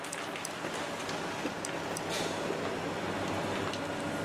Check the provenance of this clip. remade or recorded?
recorded